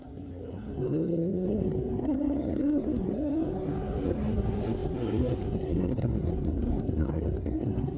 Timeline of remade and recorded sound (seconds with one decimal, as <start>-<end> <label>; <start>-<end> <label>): 0.0-8.0 remade